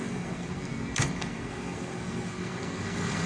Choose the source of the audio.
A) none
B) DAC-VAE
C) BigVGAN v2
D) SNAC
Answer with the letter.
D